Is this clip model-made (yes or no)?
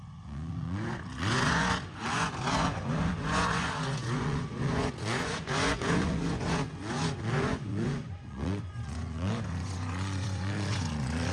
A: yes